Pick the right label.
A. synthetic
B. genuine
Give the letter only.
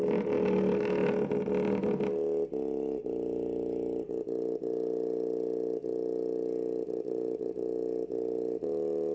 B